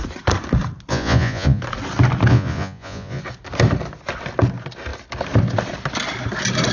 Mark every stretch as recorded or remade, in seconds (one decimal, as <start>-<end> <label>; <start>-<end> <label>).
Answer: 0.0-0.9 recorded; 0.9-1.6 remade; 1.6-2.3 recorded; 2.3-3.2 remade; 3.2-6.7 recorded